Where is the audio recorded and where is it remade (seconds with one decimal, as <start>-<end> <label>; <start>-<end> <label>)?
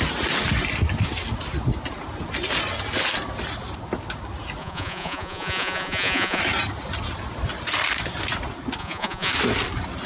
0.0-4.6 recorded; 4.6-6.4 remade; 6.4-8.8 recorded; 8.8-9.3 remade; 9.3-10.1 recorded